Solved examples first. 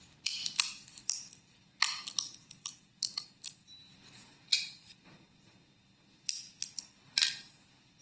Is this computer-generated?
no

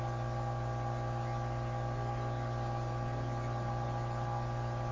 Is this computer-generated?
no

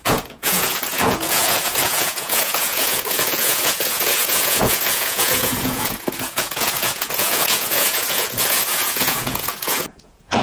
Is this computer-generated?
yes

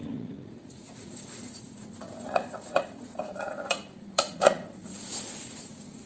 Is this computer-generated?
yes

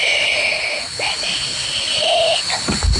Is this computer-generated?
no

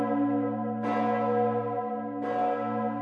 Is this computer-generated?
no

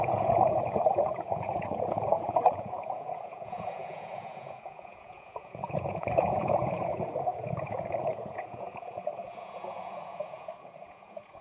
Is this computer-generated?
yes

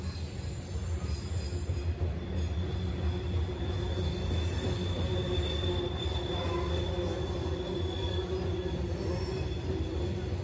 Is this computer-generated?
no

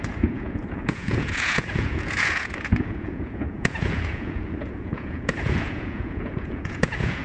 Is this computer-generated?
yes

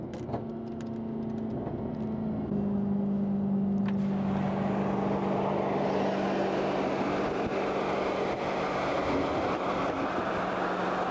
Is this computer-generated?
no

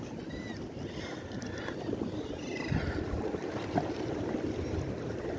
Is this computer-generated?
no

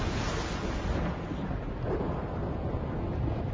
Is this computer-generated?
no